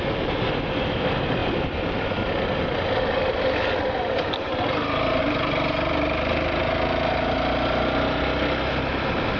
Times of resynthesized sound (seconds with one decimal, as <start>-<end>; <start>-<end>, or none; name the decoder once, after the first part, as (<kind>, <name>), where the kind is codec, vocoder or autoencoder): none